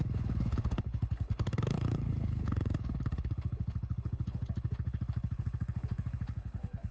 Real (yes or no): no